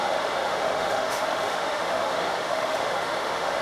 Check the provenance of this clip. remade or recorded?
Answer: remade